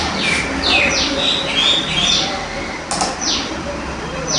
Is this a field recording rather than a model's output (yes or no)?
yes